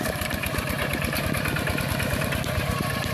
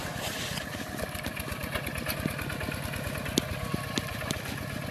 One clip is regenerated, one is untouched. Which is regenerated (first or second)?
first